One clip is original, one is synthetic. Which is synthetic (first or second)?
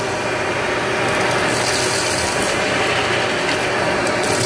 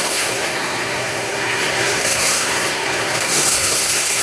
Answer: second